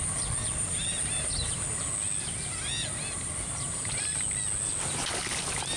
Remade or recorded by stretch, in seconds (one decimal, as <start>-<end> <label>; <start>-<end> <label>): 0.0-5.8 recorded